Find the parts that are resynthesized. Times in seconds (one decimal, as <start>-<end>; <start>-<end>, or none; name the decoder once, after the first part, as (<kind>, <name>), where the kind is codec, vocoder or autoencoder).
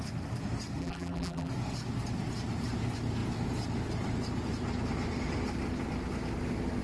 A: 0.8-1.5 (vocoder, BigVGAN v2)